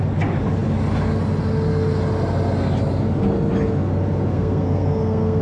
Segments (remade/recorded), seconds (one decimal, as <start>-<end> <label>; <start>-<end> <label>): 0.0-4.3 recorded; 4.3-5.4 remade